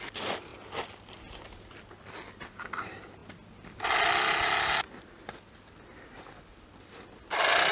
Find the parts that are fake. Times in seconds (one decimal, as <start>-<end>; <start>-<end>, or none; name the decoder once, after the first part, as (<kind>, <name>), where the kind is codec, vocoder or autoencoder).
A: none